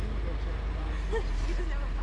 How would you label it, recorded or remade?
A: recorded